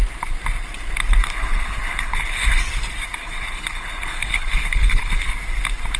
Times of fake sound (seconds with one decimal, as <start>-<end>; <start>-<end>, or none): 1.2-2.6; 3.2-5.3